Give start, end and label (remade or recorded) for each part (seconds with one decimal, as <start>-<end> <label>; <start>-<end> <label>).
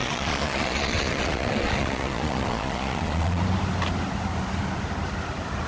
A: 0.0-3.4 remade; 3.4-5.7 recorded